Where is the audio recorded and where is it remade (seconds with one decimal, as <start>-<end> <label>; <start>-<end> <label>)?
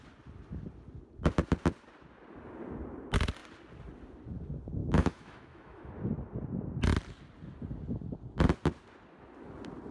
0.0-4.8 recorded; 4.8-5.9 remade; 5.9-9.9 recorded